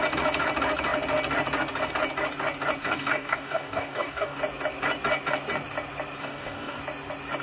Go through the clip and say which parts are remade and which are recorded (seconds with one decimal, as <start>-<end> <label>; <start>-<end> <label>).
0.0-2.8 recorded; 2.8-4.4 remade; 4.4-6.2 recorded; 6.2-6.8 remade; 6.8-7.4 recorded